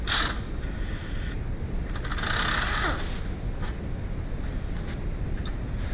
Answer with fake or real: real